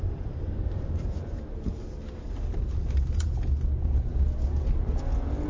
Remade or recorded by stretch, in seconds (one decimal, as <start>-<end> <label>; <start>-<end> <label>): 0.0-3.3 remade; 3.3-5.5 recorded